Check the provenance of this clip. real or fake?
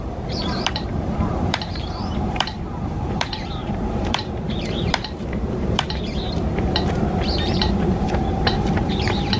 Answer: fake